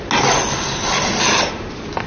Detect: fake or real real